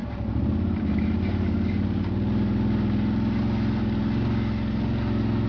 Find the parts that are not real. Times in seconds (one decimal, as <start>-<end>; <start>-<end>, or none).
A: 0.0-1.7